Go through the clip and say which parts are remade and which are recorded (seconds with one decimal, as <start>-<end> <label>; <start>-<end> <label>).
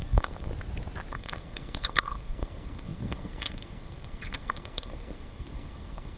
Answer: 0.0-0.5 remade; 0.5-1.1 recorded; 1.1-6.2 remade